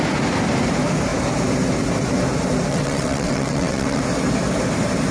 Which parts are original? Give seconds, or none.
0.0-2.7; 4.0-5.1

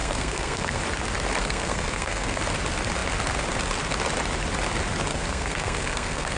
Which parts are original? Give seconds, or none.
0.8-1.4; 2.4-5.1